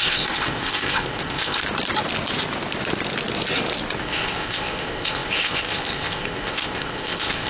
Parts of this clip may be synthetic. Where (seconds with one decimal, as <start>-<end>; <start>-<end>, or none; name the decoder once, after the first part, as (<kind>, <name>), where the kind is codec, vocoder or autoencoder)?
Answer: 0.0-1.6 (codec, ZipCodec); 4.0-7.5